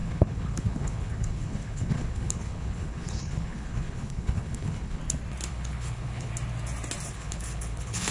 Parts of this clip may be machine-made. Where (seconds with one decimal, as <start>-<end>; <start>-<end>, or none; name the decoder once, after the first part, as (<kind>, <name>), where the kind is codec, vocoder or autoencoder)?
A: 0.0-5.0 (codec, HILCodec); 5.5-6.3; 7.1-8.1